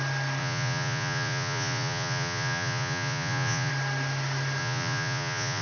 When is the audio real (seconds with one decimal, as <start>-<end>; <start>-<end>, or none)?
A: 0.0-0.4; 3.7-4.6